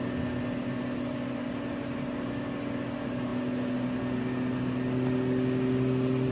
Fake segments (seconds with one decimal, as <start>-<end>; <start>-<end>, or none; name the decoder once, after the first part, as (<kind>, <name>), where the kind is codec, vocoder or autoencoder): none